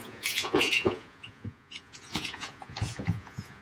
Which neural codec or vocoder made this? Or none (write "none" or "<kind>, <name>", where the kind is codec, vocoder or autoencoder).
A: vocoder, Vocos